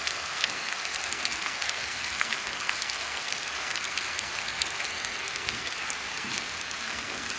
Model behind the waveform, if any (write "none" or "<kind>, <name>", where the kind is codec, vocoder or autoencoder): codec, SNAC